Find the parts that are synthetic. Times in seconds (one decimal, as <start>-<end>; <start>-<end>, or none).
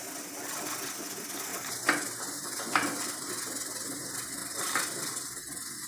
1.5-3.1; 4.4-5.4